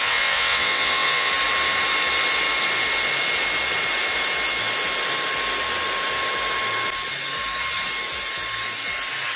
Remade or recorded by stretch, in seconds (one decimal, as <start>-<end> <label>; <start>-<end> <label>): 0.0-1.3 remade; 1.3-9.4 recorded